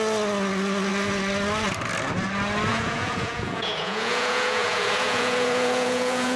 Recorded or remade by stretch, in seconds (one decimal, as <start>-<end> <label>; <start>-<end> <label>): 0.0-2.7 recorded; 2.7-6.4 remade